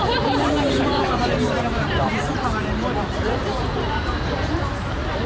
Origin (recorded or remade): remade